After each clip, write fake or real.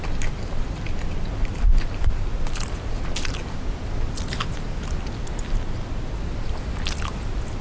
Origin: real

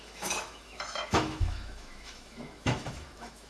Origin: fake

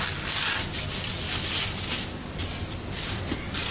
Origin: real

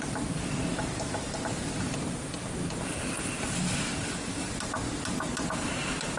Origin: real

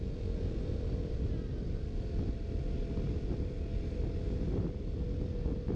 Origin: real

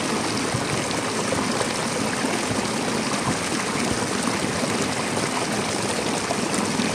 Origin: real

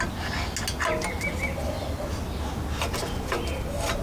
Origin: real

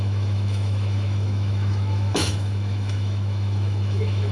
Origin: fake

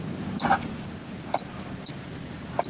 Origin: real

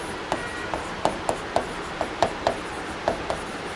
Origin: real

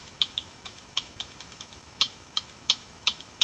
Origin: fake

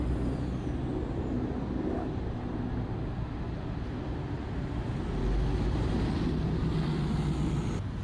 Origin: real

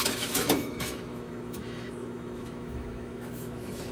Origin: fake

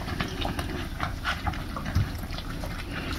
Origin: real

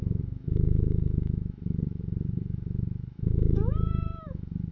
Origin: fake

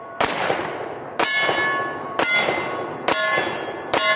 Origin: real